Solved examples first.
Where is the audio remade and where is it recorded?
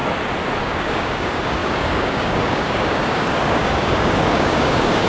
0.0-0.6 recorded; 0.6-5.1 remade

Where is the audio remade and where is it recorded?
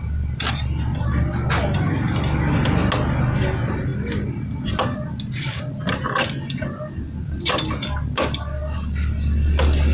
0.0-9.9 recorded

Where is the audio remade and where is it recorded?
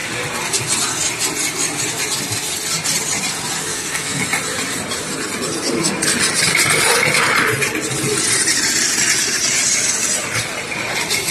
0.0-3.7 recorded; 3.7-4.2 remade; 4.2-11.3 recorded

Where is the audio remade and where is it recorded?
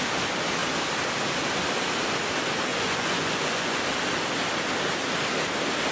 0.0-2.7 recorded; 2.7-3.8 remade; 3.8-5.9 recorded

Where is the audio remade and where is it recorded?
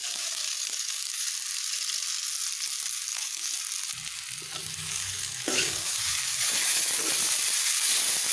0.0-1.3 remade; 1.3-3.1 recorded; 3.1-3.6 remade; 3.6-4.6 recorded; 4.6-6.9 remade; 6.9-8.3 recorded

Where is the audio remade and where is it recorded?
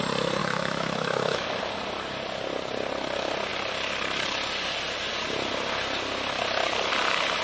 0.0-0.4 recorded; 0.4-1.6 remade; 1.6-7.4 recorded